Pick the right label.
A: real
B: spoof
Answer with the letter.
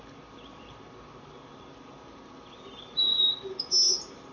A